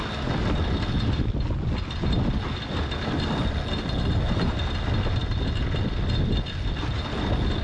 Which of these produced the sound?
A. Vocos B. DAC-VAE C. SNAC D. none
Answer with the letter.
D